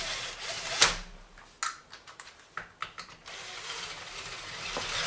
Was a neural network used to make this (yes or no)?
no